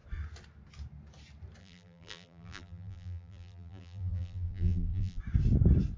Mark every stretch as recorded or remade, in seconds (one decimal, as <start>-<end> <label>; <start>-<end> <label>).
0.0-1.6 recorded; 1.6-5.2 remade; 5.2-6.0 recorded